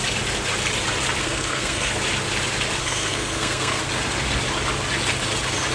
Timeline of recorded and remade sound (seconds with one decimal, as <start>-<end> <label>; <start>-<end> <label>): 0.0-1.2 recorded; 1.2-1.9 remade; 1.9-2.8 recorded; 2.8-3.8 remade; 3.8-5.7 recorded